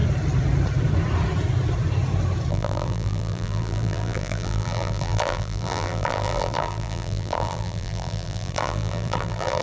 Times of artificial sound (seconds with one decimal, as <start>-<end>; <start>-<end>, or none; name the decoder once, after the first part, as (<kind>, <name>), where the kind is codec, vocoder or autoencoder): 2.5-9.6 (vocoder, BigVGAN v2)